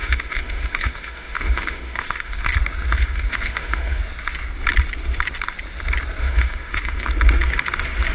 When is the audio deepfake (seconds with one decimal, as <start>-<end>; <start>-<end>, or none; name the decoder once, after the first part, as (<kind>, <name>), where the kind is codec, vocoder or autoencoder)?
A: 0.0-2.5 (autoencoder, DAC-VAE); 2.9-4.0; 6.2-7.1